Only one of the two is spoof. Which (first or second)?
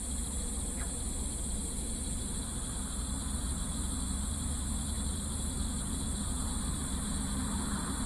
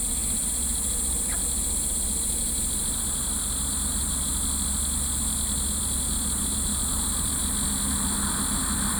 first